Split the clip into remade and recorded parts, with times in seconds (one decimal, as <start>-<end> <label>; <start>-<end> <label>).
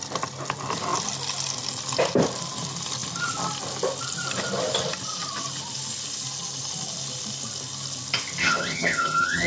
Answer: 0.0-8.4 recorded; 8.4-9.5 remade